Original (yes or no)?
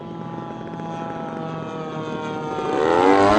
yes